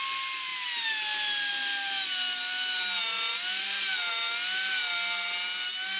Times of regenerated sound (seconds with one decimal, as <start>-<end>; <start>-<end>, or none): none